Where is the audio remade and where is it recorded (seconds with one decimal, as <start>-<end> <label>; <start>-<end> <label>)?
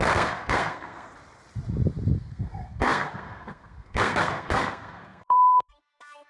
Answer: 0.0-1.1 remade; 1.1-2.2 recorded; 2.2-6.3 remade